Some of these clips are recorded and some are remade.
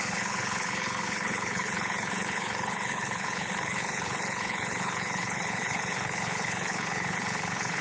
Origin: remade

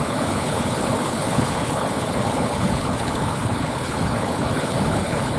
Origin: remade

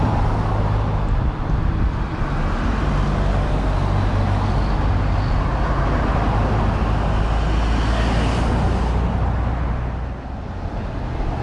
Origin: recorded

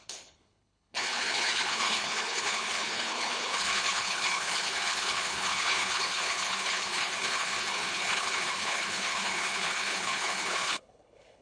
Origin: remade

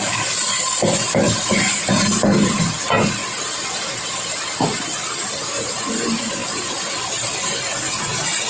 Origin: recorded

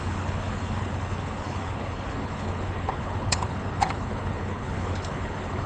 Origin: remade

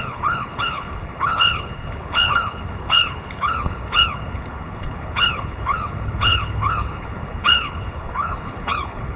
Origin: remade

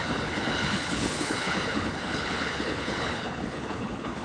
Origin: remade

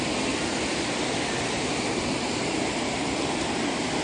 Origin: recorded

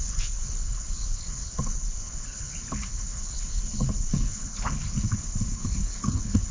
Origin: remade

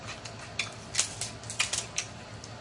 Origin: recorded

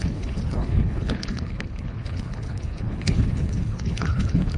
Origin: remade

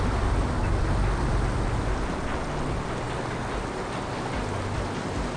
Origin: recorded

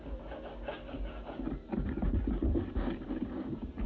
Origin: recorded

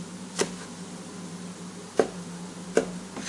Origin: recorded